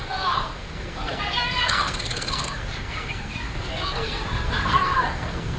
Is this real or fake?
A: fake